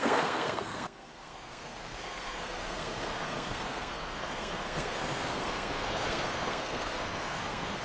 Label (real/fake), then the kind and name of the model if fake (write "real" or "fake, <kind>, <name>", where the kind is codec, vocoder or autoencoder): fake, codec, SNAC